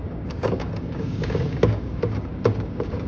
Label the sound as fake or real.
fake